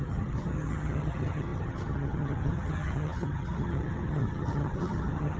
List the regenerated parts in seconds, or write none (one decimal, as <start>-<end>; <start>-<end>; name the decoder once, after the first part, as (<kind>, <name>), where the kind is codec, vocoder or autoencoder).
0.0-5.4 (vocoder, HiFi-GAN)